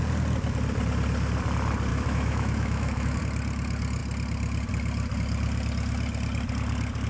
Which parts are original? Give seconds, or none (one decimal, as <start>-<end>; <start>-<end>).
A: 0.0-1.9; 3.2-7.1